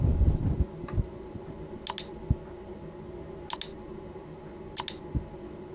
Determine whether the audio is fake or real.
real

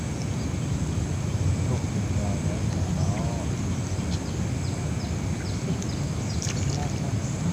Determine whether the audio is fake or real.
real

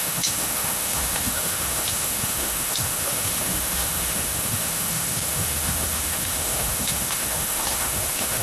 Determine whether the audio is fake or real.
fake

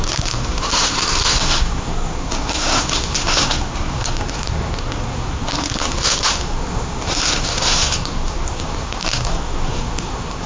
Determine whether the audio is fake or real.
fake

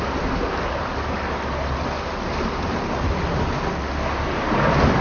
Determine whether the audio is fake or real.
real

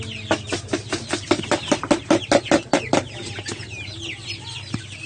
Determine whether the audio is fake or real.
real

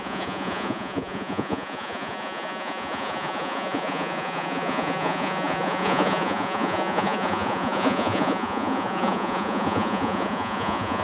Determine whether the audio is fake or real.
fake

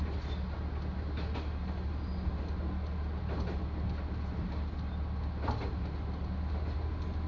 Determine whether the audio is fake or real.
real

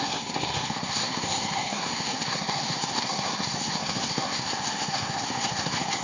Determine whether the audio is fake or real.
fake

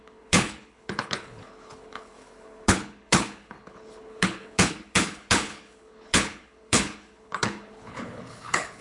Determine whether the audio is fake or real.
fake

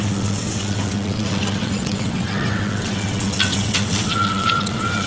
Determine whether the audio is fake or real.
fake